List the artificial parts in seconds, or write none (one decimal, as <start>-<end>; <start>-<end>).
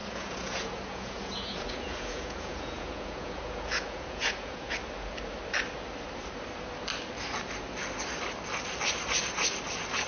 0.0-4.7